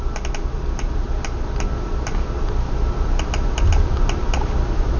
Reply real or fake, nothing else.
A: real